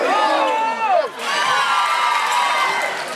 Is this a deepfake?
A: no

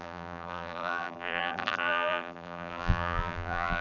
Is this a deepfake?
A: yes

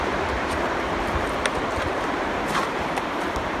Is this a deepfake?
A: yes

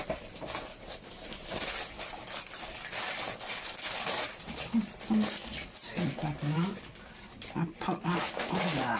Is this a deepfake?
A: yes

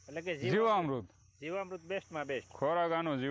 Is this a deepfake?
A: no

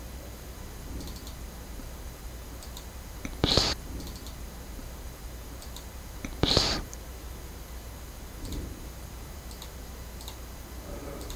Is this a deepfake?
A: yes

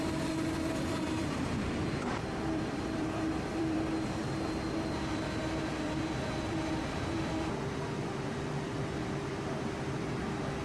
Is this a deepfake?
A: yes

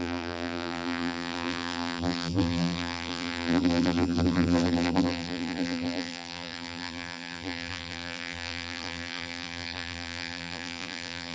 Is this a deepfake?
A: yes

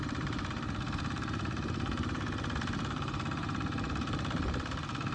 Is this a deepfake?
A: yes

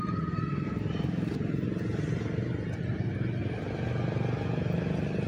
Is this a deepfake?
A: no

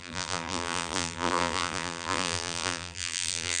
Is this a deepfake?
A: yes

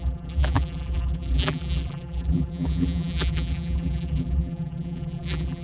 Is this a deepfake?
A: yes